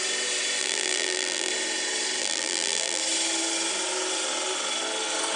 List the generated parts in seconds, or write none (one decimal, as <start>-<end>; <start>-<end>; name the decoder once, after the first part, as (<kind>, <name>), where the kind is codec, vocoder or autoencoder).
0.6-1.5 (vocoder, BigVGAN v2); 2.2-3.0